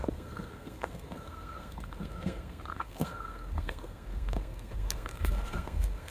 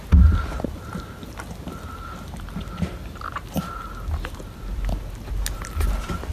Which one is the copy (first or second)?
first